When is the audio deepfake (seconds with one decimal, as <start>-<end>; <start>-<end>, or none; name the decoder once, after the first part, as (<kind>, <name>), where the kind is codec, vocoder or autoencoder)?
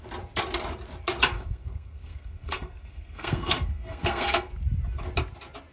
1.3-4.5 (codec, SNAC)